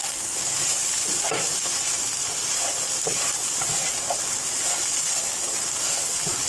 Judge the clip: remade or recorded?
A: recorded